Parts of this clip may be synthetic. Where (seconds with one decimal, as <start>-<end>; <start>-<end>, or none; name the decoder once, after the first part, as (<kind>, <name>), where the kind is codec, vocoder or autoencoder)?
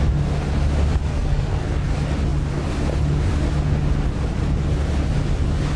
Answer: 1.1-1.9 (codec, SNAC)